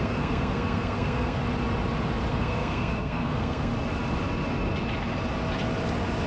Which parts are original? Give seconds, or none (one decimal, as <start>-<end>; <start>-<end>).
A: 1.4-2.3; 3.7-6.3